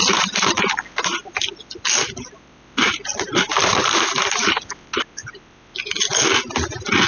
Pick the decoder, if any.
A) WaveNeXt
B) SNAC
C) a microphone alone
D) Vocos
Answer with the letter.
C